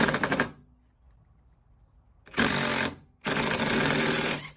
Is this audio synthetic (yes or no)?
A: no